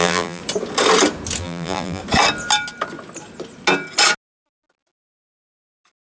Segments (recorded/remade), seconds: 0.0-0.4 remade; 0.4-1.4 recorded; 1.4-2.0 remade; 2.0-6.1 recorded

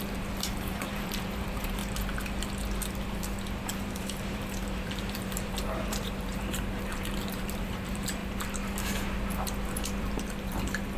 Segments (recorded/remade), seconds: 0.0-1.8 remade; 1.8-3.8 recorded; 3.8-8.2 remade; 8.2-10.0 recorded; 10.0-11.0 remade